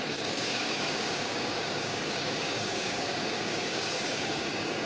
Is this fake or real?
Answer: fake